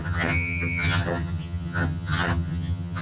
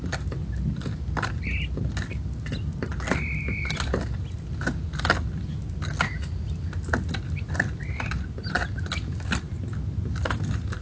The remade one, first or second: first